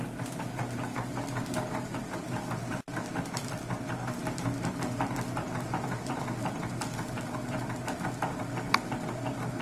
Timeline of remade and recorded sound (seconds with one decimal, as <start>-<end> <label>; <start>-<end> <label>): 0.0-9.6 recorded